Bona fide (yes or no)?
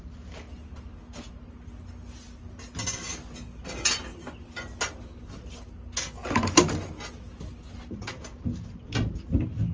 yes